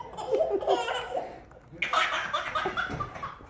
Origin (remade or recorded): recorded